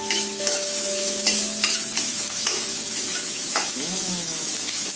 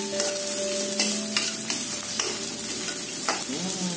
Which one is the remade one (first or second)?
first